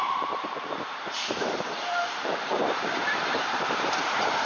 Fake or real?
fake